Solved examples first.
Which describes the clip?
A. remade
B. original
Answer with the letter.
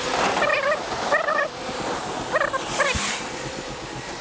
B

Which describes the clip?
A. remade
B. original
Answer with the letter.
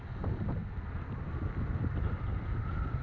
B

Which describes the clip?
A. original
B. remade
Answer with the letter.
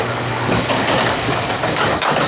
B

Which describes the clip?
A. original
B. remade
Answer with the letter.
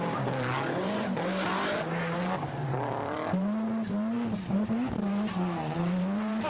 B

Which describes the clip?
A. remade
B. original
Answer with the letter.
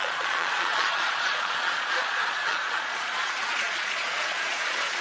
A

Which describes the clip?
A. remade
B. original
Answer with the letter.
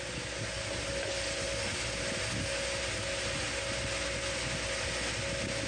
B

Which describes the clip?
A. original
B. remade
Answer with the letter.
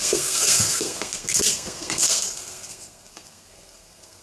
B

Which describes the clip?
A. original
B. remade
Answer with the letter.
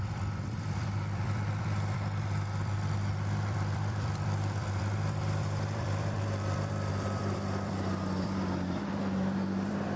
B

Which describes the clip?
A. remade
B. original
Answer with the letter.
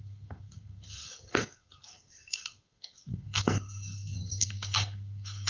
A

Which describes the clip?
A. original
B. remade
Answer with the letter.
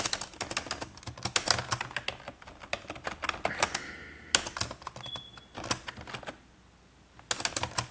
A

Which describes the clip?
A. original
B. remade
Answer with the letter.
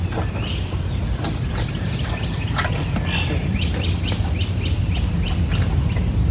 A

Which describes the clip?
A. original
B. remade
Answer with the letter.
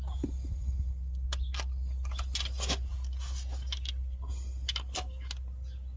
A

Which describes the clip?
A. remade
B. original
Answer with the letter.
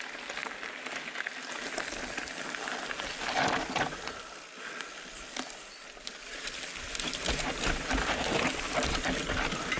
B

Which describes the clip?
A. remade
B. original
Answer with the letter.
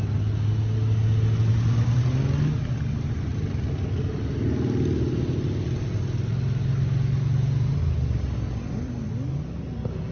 B